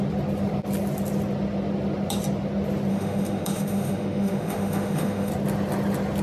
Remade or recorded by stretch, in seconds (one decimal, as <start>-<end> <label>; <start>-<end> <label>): 0.0-2.9 recorded; 2.9-5.3 remade; 5.3-6.2 recorded